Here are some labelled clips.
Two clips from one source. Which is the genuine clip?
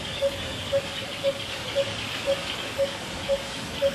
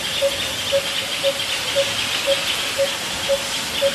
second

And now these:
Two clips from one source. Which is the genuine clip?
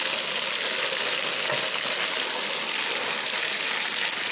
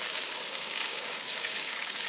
first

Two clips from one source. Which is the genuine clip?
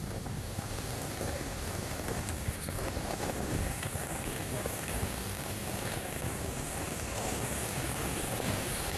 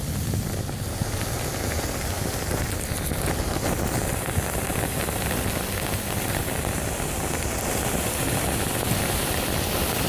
second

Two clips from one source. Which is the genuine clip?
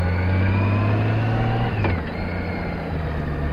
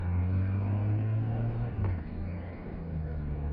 first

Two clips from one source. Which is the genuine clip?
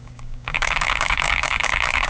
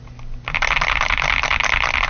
second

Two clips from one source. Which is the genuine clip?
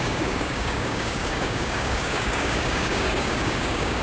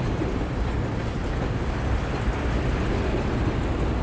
second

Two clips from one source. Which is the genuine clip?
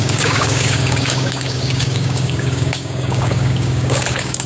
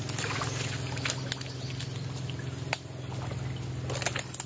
second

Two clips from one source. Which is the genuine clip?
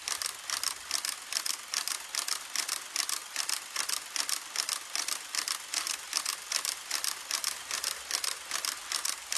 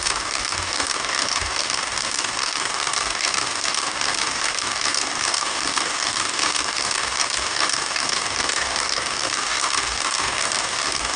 first